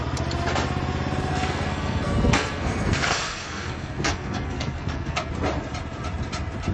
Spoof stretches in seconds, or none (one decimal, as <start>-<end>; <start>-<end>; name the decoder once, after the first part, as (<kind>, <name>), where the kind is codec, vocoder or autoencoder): 1.3-5.3 (codec, SNAC)